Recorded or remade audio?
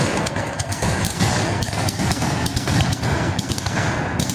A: remade